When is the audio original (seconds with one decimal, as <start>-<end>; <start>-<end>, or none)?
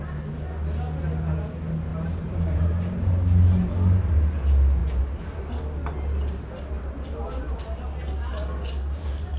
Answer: 0.0-1.9; 3.1-9.4